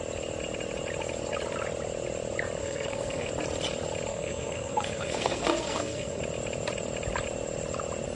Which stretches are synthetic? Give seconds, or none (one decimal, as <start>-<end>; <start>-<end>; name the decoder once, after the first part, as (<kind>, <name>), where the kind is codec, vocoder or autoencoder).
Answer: 2.6-3.3 (codec, SNAC); 4.1-6.2